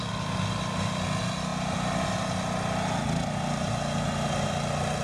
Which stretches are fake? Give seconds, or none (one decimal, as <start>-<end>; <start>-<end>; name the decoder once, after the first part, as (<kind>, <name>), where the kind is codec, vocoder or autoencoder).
none